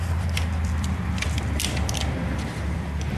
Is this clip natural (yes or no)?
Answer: no